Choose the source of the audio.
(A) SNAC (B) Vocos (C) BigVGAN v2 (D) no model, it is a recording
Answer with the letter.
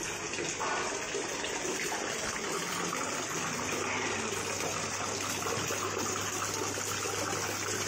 D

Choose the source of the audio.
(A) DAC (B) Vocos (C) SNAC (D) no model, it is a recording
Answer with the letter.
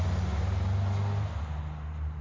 D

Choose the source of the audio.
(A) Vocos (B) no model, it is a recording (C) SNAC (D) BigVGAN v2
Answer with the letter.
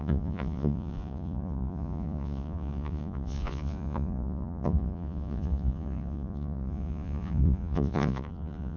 A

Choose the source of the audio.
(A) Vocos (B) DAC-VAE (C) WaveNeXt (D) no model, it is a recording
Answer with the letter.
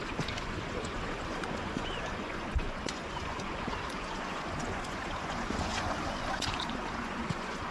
A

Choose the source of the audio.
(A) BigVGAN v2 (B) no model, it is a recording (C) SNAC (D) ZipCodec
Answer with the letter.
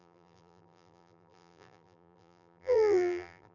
A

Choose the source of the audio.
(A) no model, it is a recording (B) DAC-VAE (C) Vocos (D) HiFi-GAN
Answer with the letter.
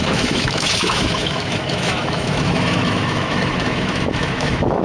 B